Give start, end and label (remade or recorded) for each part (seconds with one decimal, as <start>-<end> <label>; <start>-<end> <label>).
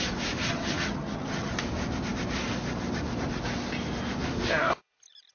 0.0-0.4 recorded; 0.4-1.5 remade; 1.5-5.3 recorded